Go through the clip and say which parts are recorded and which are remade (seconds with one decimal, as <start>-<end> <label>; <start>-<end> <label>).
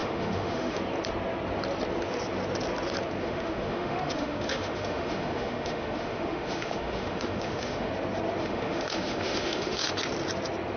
0.0-0.8 remade; 0.8-3.2 recorded; 3.2-7.9 remade; 7.9-8.4 recorded; 8.4-9.9 remade; 9.9-10.8 recorded